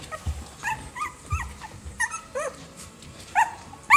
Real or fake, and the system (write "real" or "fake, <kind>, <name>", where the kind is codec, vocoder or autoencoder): fake, vocoder, BigVGAN v2